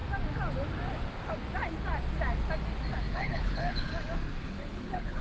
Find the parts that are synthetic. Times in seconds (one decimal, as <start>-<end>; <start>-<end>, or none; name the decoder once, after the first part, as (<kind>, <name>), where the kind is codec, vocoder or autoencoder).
3.1-3.9 (codec, HILCodec); 4.5-5.2

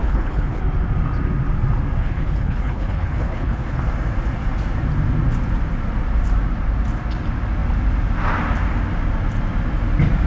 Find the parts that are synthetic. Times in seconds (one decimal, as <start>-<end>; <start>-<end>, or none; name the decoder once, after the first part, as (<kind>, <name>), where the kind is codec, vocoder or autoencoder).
0.0-0.6 (codec, HILCodec); 2.0-3.8

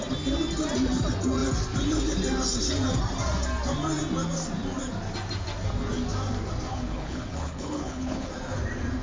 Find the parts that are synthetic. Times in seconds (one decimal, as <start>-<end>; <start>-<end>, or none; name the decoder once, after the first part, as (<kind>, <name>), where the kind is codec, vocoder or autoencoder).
6.7-8.3 (codec, HILCodec)

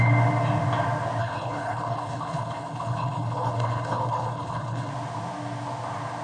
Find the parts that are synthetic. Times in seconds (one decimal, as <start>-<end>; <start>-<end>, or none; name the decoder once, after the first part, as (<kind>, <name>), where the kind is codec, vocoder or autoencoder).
1.2-4.9 (codec, HILCodec)

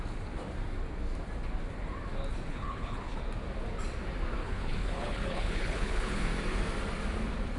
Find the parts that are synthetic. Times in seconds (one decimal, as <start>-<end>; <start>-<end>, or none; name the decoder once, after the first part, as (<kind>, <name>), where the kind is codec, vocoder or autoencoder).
2.5-3.2 (codec, HILCodec); 4.4-6.2

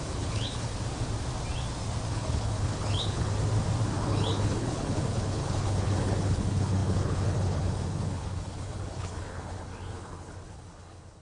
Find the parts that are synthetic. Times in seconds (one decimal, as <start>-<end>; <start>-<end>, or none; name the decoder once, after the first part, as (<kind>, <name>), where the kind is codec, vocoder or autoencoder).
0.0-0.7 (codec, HILCodec); 2.1-3.3; 3.9-11.2

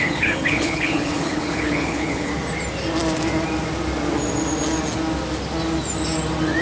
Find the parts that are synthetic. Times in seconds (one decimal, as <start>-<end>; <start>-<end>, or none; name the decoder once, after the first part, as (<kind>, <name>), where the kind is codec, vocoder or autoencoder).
0.0-2.3 (codec, HILCodec)